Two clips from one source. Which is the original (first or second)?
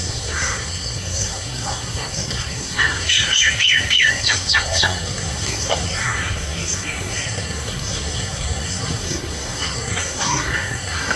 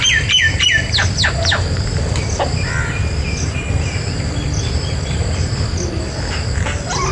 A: second